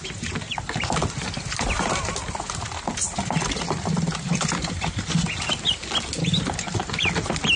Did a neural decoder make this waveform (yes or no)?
no